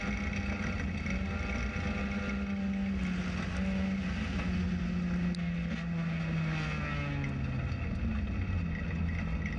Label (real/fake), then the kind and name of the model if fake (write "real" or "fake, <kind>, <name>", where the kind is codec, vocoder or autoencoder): real